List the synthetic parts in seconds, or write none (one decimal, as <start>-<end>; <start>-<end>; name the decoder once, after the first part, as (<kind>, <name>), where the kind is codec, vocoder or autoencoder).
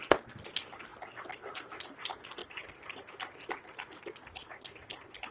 2.4-3.1 (vocoder, BigVGAN v2); 4.4-5.3